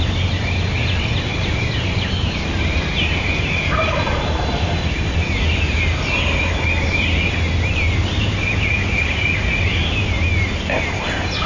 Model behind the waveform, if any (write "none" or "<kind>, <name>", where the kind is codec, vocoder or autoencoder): none